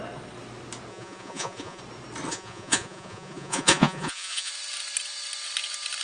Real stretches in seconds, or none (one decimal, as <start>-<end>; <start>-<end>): 0.0-0.9; 1.8-2.3; 4.5-6.0